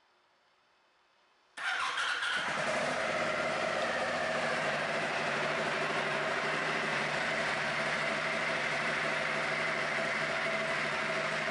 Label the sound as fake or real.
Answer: fake